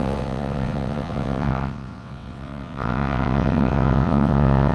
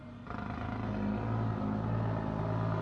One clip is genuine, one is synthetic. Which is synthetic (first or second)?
first